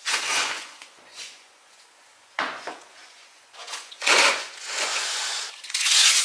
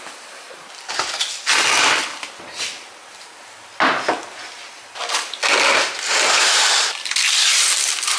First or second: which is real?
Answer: second